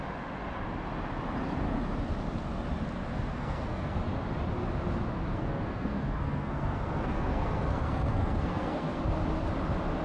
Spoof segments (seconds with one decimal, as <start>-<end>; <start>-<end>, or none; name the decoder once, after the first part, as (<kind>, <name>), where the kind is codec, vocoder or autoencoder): 3.3-4.0 (codec, SNAC); 5.3-9.0